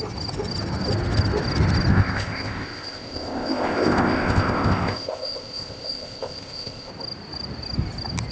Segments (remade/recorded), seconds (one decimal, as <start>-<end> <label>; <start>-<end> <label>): 0.0-1.9 recorded; 1.9-6.9 remade; 6.9-8.3 recorded